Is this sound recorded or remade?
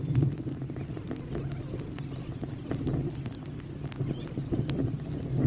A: recorded